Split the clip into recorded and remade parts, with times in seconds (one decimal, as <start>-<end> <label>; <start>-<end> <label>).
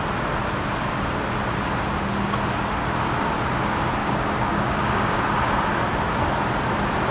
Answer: 0.0-4.0 recorded; 4.0-5.2 remade; 5.2-7.1 recorded